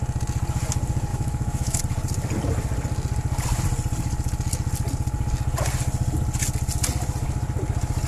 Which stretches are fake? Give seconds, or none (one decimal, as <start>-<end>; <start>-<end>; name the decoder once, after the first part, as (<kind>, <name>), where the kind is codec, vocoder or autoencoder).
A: 1.1-1.8 (autoencoder, DAC-VAE)